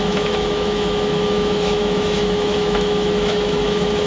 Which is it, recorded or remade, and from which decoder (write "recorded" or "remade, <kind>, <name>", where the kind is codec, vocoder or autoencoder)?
remade, autoencoder, DAC-VAE